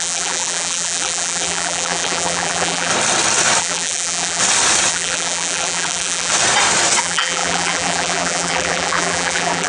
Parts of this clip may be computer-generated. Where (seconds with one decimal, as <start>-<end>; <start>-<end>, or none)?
0.0-2.9; 3.6-4.4; 4.9-6.3; 7.0-9.7